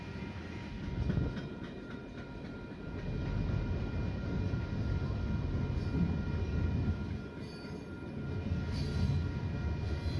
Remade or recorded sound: recorded